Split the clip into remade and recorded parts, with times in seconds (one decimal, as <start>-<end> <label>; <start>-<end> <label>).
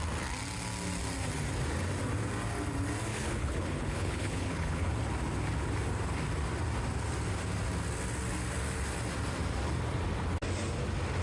0.0-3.1 recorded; 3.1-4.9 remade; 4.9-11.2 recorded